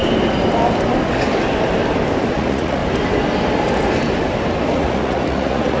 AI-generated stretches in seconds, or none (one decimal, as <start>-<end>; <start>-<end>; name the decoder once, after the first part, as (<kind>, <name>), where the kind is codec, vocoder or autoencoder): 2.3-2.8 (vocoder, Vocos); 4.7-5.8